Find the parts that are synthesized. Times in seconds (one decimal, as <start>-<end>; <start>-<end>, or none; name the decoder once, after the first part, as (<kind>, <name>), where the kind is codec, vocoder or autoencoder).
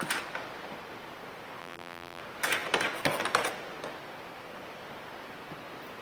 1.6-2.2 (vocoder, BigVGAN v2)